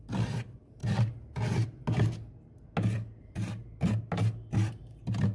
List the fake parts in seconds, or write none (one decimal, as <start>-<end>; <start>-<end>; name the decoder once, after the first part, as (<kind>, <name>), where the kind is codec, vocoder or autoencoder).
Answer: none